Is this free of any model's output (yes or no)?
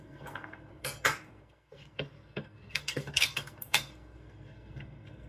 no